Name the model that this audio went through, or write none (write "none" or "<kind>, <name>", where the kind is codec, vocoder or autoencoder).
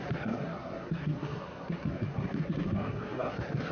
codec, SNAC